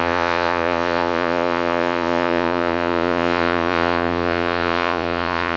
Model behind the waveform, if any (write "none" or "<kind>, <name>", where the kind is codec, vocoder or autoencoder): vocoder, Vocos